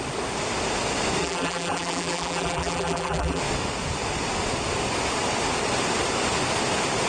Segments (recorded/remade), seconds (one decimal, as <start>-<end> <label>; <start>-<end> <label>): 0.0-1.2 recorded; 1.2-3.4 remade; 3.4-7.1 recorded